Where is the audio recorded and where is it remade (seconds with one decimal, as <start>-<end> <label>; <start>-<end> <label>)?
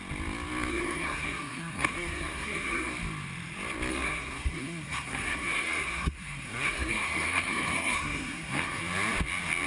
0.0-0.7 recorded; 0.7-2.9 remade; 2.9-3.9 recorded; 3.9-8.8 remade; 8.8-9.7 recorded